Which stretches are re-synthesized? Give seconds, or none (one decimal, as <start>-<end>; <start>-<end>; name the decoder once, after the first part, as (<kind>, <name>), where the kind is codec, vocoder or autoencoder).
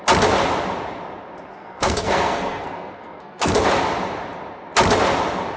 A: 1.5-3.5 (codec, SNAC)